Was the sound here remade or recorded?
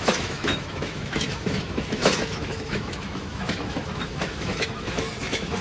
remade